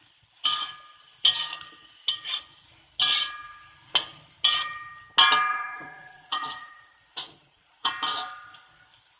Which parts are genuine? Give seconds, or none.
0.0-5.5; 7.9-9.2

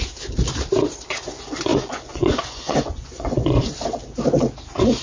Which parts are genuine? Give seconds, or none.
0.0-1.7; 3.6-5.0

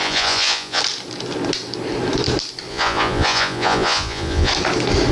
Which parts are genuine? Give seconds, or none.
0.8-2.7; 4.5-5.1

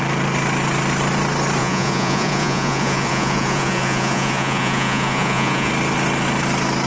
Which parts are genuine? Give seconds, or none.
0.0-1.6; 5.7-6.9

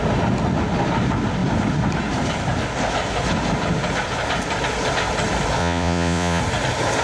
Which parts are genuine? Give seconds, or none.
0.0-5.6; 6.4-7.0

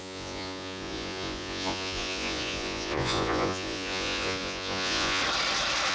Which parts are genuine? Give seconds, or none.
5.2-5.9